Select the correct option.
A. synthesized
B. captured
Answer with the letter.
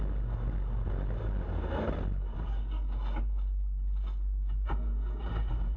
B